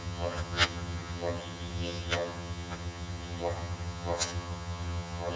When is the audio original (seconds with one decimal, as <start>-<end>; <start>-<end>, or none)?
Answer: none